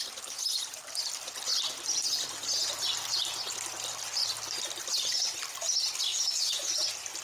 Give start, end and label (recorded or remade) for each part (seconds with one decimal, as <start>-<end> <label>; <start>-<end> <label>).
0.0-6.1 recorded; 6.1-6.7 remade; 6.7-7.2 recorded